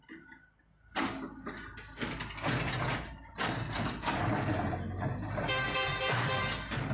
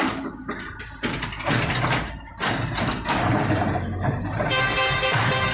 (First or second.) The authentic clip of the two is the first